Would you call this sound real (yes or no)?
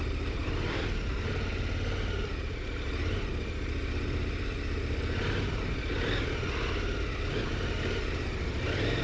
no